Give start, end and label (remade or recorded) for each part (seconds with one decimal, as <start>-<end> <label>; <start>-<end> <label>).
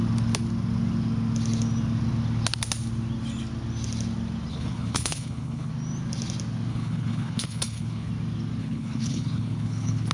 0.0-4.5 recorded; 4.5-5.7 remade; 5.7-6.7 recorded; 6.7-8.1 remade; 8.1-8.6 recorded; 8.6-10.1 remade